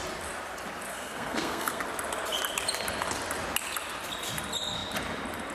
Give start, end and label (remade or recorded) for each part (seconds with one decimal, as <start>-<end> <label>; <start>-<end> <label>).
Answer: 0.0-0.9 recorded; 0.9-1.8 remade; 1.8-5.5 recorded